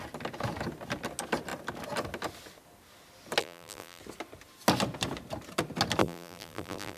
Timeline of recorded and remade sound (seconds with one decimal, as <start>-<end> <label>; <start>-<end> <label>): 0.0-3.4 recorded; 3.4-4.0 remade; 4.0-6.0 recorded; 6.0-7.0 remade